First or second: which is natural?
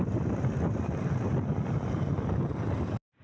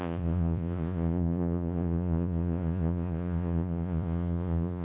first